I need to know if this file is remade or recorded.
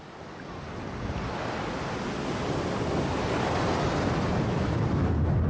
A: recorded